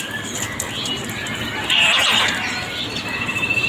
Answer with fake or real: real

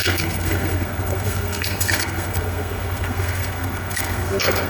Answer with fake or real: fake